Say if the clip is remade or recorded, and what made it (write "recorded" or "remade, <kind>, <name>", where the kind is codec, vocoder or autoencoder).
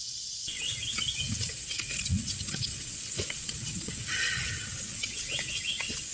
remade, vocoder, WaveNeXt